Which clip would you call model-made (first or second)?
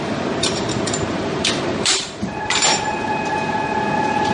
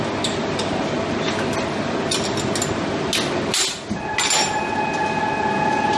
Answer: first